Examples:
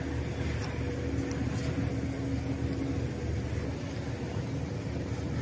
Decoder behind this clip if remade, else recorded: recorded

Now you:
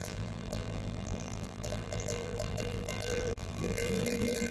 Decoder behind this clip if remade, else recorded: remade, vocoder, BigVGAN v2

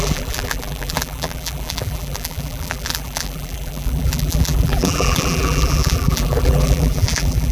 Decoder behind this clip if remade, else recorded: remade, vocoder, BigVGAN v2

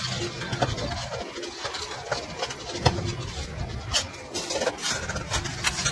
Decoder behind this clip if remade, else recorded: recorded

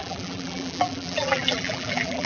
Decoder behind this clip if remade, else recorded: remade, vocoder, BigVGAN v2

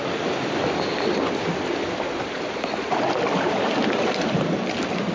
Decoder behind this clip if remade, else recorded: recorded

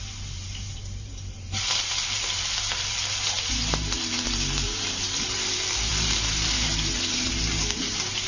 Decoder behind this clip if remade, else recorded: remade, vocoder, BigVGAN v2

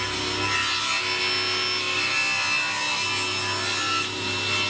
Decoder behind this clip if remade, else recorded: recorded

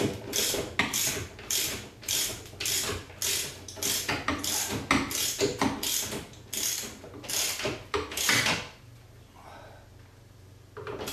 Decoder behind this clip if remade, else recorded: recorded